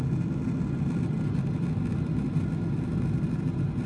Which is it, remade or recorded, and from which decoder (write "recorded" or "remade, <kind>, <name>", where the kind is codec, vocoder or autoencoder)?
recorded